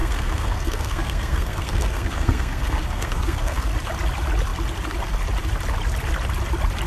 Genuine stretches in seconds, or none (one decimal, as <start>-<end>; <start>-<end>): 3.7-6.9